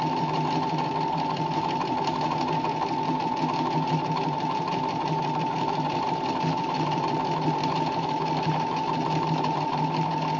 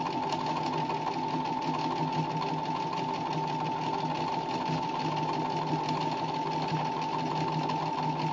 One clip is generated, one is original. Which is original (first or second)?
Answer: second